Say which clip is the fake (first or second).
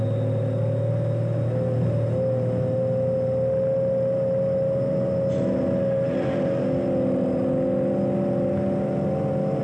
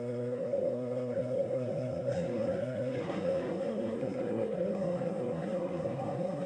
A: second